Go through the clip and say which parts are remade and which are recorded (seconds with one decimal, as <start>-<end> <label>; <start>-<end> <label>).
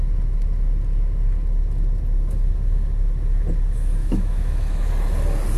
0.0-4.0 recorded; 4.0-4.9 remade; 4.9-5.6 recorded